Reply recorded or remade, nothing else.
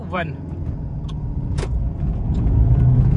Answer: remade